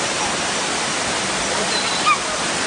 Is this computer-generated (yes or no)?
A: no